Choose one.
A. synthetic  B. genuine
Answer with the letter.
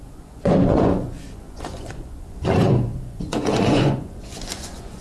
A